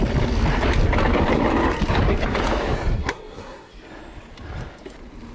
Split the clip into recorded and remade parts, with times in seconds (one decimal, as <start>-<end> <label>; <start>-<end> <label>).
0.0-3.0 recorded; 3.0-3.7 remade; 3.7-5.3 recorded